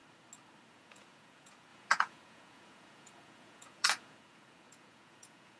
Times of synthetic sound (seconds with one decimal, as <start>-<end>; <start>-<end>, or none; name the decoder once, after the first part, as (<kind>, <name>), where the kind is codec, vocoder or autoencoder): 0.7-5.6 (vocoder, Vocos)